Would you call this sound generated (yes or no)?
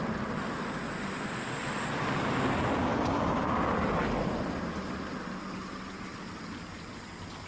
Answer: no